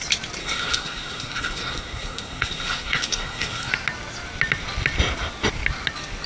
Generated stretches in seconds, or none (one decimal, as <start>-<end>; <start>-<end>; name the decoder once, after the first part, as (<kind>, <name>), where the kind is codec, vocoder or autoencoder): 0.4-3.7 (codec, SNAC)